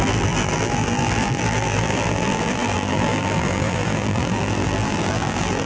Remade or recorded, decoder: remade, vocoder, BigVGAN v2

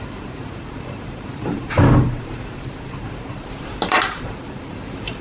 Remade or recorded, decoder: remade, vocoder, BigVGAN v2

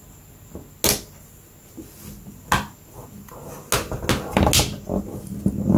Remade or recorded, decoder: recorded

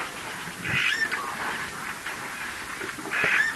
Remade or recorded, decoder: recorded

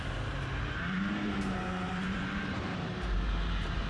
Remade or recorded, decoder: remade, vocoder, BigVGAN v2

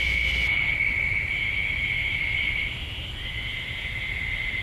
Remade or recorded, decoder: recorded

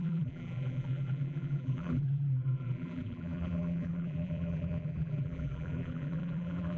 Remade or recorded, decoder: remade, vocoder, BigVGAN v2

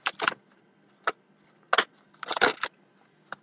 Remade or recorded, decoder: recorded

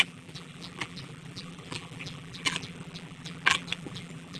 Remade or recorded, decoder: remade, vocoder, BigVGAN v2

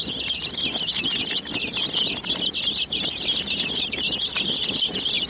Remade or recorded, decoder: recorded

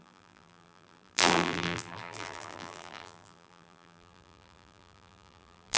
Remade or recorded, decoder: remade, vocoder, BigVGAN v2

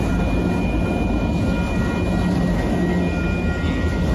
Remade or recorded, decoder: recorded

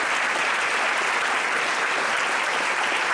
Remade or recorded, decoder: recorded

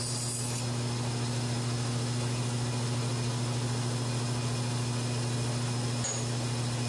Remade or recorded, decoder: recorded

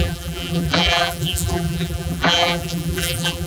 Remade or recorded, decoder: remade, vocoder, BigVGAN v2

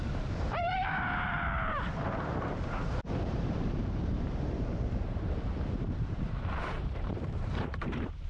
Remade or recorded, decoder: remade, vocoder, BigVGAN v2